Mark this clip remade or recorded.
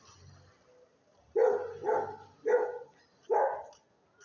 recorded